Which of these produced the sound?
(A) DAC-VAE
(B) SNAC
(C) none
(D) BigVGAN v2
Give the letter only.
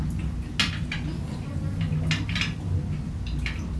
C